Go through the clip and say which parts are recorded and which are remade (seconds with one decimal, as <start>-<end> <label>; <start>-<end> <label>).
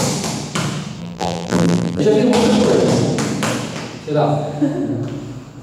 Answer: 0.0-1.0 recorded; 1.0-2.0 remade; 2.0-5.6 recorded